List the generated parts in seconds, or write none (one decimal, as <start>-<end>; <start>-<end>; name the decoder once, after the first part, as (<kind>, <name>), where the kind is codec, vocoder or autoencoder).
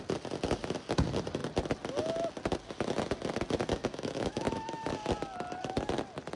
3.8-4.9 (autoencoder, DAC-VAE)